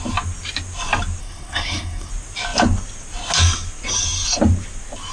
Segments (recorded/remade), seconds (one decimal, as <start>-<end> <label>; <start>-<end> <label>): 0.0-1.2 recorded; 1.2-2.1 remade; 2.1-5.1 recorded